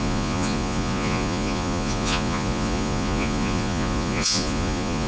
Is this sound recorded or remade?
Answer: remade